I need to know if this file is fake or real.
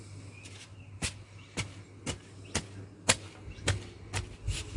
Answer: real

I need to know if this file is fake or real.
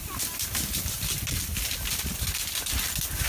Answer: real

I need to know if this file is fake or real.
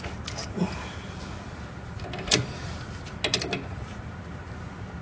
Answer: real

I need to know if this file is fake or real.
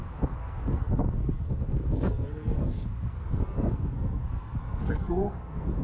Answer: fake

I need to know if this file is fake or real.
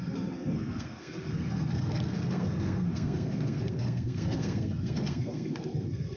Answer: fake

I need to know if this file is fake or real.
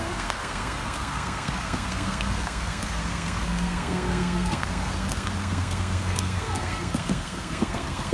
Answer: fake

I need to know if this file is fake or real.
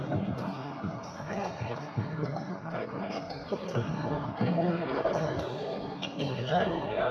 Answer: fake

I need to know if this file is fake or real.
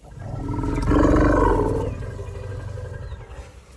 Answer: real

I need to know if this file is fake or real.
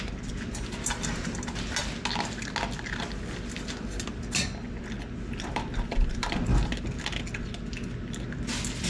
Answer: real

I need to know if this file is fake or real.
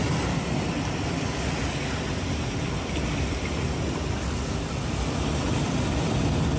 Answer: real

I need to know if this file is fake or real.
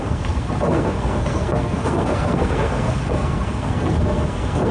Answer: fake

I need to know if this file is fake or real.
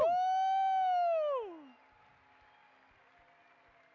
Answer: real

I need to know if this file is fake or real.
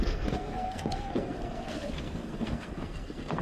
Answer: fake